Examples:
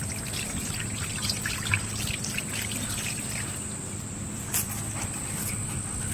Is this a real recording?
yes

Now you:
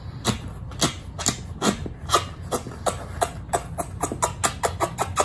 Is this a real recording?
yes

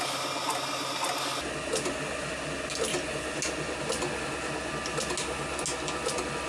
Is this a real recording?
yes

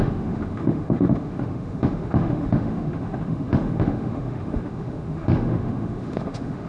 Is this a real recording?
no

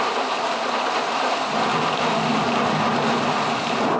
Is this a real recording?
yes